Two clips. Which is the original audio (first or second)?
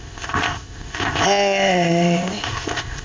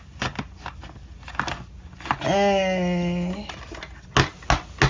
second